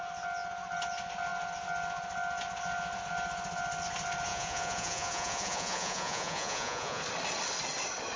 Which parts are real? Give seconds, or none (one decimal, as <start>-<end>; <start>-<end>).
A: 0.0-4.3; 7.0-8.2